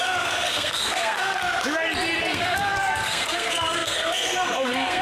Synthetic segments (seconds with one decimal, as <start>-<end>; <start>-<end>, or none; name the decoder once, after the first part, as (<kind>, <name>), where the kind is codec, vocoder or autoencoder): 0.0-1.4 (codec, SNAC); 2.2-5.0